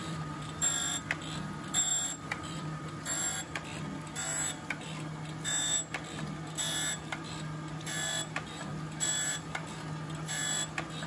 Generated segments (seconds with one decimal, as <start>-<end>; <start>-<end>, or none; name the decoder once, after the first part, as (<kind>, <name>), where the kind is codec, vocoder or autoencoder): 0.0-1.0 (vocoder, BigVGAN v2); 1.9-3.6